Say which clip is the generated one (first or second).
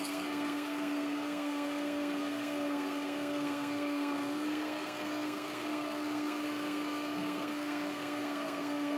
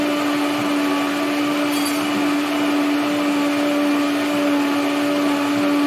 first